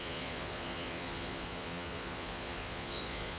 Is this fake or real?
fake